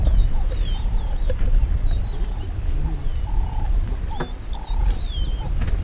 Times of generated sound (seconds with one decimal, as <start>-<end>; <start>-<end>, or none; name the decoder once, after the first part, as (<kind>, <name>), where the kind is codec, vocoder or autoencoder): none